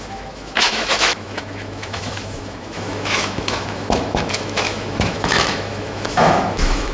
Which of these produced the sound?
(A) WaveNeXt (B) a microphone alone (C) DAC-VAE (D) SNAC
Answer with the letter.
C